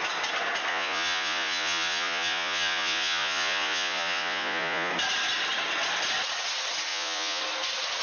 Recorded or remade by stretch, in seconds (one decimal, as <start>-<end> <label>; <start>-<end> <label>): 0.0-0.7 recorded; 0.7-4.9 remade; 4.9-6.9 recorded; 6.9-7.4 remade; 7.4-8.0 recorded